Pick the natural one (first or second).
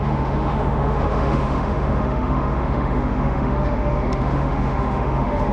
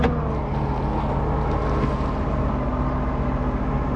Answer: second